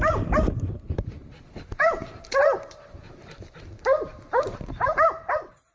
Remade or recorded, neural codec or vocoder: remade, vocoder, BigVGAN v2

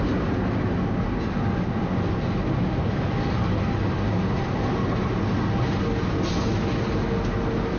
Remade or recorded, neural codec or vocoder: recorded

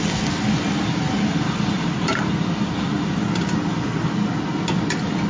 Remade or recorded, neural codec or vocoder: recorded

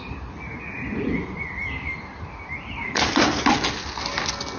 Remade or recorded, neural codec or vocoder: recorded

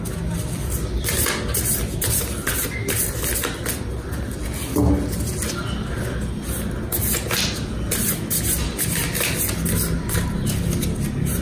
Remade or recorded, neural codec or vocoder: recorded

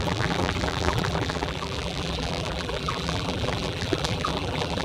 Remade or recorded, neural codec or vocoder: remade, vocoder, BigVGAN v2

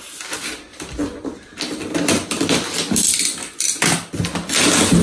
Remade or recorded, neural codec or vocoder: recorded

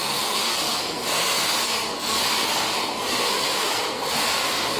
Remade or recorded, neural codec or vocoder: remade, codec, SNAC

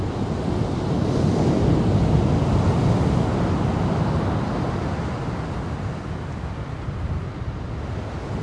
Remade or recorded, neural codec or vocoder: recorded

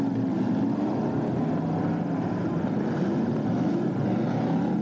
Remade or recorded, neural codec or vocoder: recorded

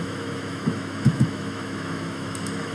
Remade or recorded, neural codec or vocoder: remade, autoencoder, DAC-VAE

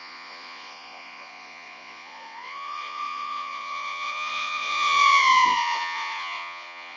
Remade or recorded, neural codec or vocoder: remade, vocoder, Vocos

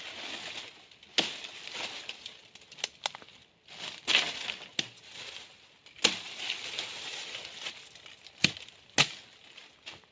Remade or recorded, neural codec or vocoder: recorded